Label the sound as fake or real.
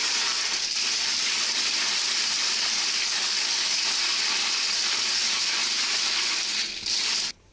real